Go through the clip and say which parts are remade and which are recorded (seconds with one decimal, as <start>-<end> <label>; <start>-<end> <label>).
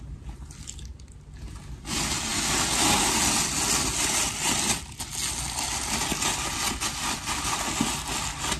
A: 0.0-8.6 recorded